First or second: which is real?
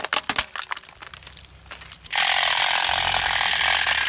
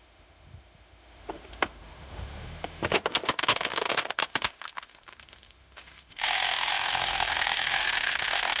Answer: first